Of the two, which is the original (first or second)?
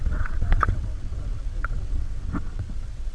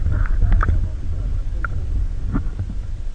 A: second